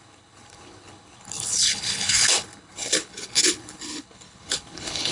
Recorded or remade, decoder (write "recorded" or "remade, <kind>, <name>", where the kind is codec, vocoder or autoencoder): remade, codec, HILCodec